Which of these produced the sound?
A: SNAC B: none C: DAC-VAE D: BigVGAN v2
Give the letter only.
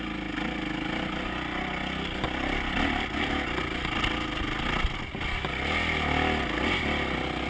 B